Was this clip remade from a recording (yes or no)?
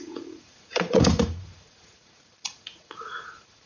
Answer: yes